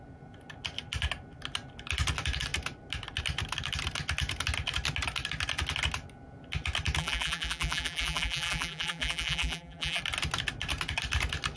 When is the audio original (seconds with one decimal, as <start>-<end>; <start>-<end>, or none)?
0.0-7.0; 10.0-11.6